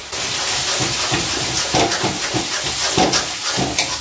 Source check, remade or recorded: recorded